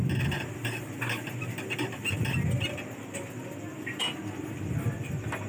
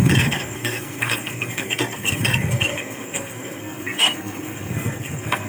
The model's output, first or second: second